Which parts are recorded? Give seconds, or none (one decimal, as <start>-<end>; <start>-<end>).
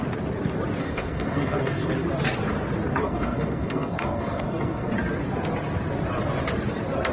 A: 0.0-0.8; 1.9-3.0; 4.9-7.1